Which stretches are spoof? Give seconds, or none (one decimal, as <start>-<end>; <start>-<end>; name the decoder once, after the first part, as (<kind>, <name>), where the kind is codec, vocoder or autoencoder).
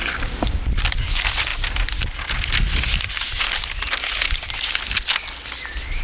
none